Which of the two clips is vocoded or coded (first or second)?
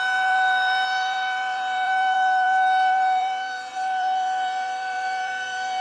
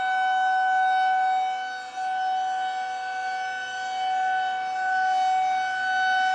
first